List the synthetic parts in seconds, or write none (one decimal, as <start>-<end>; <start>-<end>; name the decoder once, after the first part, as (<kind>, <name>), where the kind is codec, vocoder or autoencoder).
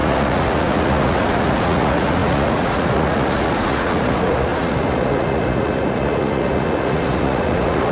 0.0-7.9 (vocoder, Vocos)